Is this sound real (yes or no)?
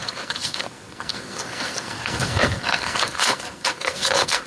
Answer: no